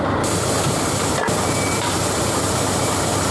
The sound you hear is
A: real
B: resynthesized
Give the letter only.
B